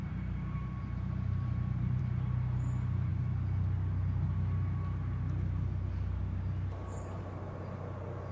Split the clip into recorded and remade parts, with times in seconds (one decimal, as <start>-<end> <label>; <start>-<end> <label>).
0.0-2.0 remade; 2.0-8.3 recorded